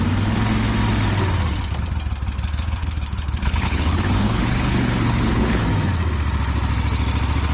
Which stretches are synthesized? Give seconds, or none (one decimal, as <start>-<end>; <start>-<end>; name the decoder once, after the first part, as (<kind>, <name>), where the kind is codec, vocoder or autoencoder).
2.8-5.6 (codec, HILCodec)